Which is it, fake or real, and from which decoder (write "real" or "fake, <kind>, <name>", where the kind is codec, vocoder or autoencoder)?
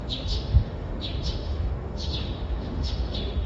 fake, autoencoder, DAC-VAE